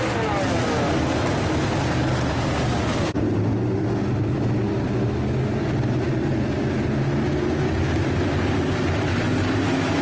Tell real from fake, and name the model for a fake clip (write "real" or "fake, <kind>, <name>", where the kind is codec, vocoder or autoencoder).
real